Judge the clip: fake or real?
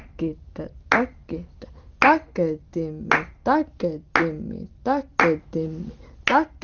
real